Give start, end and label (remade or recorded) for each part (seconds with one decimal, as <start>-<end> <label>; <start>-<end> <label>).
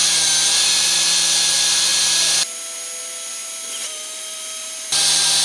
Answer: 0.0-5.4 recorded